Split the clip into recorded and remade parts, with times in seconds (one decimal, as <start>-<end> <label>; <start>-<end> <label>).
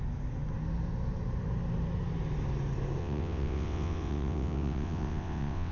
0.0-3.0 recorded; 3.0-5.7 remade